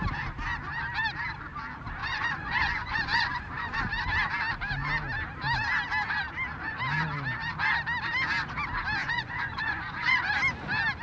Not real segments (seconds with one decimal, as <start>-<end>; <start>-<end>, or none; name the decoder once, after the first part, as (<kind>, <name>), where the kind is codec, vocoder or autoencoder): 2.0-3.8 (vocoder, Vocos); 9.0-10.2